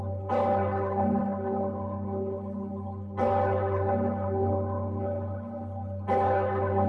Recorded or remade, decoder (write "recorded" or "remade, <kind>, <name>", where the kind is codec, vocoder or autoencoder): remade, codec, HILCodec